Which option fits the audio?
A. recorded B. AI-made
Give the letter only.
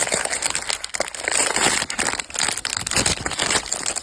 A